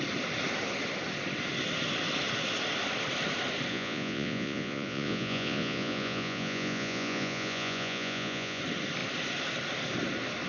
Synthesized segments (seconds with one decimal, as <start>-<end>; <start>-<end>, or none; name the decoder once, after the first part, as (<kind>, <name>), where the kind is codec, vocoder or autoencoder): 3.7-8.6 (vocoder, Vocos)